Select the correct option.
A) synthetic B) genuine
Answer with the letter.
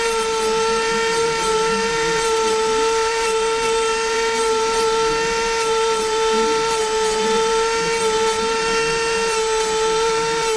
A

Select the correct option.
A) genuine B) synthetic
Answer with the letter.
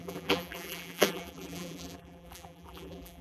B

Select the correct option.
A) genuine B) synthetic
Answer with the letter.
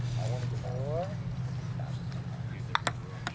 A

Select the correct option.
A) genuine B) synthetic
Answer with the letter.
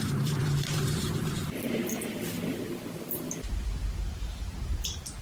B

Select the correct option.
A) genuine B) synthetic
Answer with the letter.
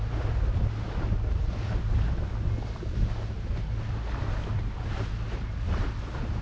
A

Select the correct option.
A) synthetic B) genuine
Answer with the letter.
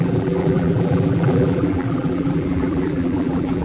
A